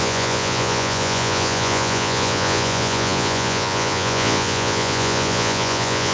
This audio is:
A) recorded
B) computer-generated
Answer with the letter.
B